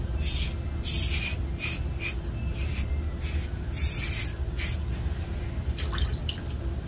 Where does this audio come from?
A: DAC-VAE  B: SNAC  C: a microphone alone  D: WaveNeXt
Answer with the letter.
C